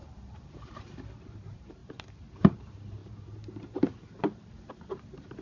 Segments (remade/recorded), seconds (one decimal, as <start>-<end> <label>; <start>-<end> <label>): 0.0-1.8 remade; 1.8-2.3 recorded; 2.3-3.0 remade; 3.0-4.9 recorded; 4.9-5.4 remade